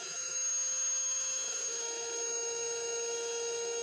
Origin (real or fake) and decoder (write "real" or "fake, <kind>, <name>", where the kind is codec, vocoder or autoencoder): fake, autoencoder, DAC-VAE